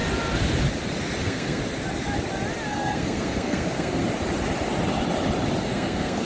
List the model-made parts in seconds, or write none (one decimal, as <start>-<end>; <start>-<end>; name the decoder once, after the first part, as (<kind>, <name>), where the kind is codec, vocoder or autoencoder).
1.2-1.6 (codec, SNAC); 2.7-4.0; 5.6-6.2